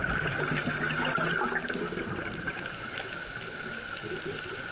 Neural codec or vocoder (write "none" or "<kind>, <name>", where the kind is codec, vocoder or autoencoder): none